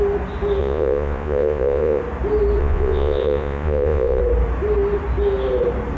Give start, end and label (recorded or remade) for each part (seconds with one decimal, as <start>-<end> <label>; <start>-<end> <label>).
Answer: 0.0-0.6 recorded; 0.6-2.0 remade; 2.0-2.6 recorded; 2.6-4.2 remade; 4.2-6.0 recorded